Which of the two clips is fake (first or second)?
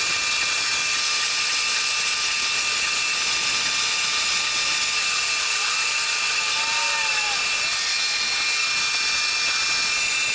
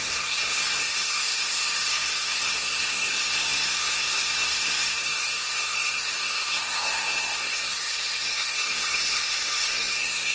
second